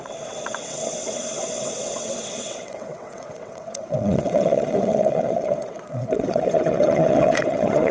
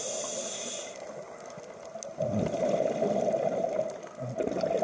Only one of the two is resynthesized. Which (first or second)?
first